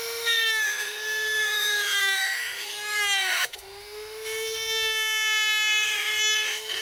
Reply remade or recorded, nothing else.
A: remade